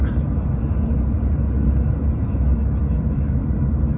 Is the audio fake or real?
fake